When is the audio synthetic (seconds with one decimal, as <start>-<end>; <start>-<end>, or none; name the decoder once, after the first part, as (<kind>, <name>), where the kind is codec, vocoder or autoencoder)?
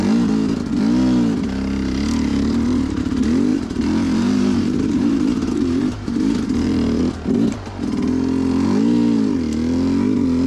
2.3-3.0 (vocoder, BigVGAN v2); 3.5-7.0